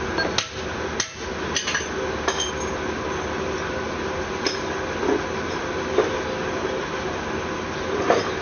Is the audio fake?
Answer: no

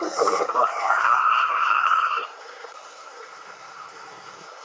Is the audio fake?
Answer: yes